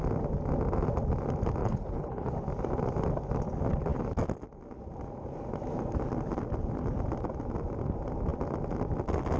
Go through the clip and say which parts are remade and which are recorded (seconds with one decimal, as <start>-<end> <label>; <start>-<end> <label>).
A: 0.0-1.6 recorded; 1.6-2.3 remade; 2.3-9.4 recorded